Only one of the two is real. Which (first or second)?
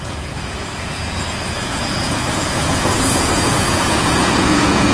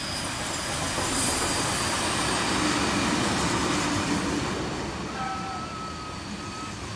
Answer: second